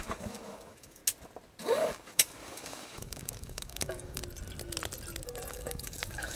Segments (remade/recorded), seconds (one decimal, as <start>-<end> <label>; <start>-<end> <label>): 0.0-1.0 remade; 1.0-1.6 recorded; 1.6-4.2 remade; 4.2-5.5 recorded; 5.5-6.4 remade